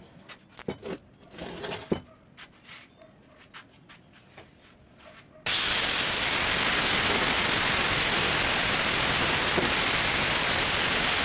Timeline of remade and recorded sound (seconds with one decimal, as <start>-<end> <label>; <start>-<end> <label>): 0.0-11.2 recorded